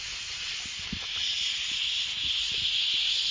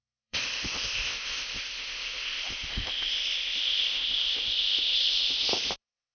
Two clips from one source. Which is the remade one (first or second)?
second